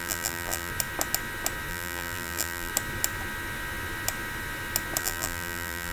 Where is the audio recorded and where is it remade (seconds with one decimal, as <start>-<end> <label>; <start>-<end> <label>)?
0.0-0.7 remade; 0.7-1.7 recorded; 1.7-2.7 remade; 2.7-5.0 recorded; 5.0-5.9 remade